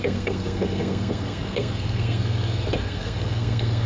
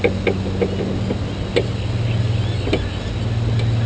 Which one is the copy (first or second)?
first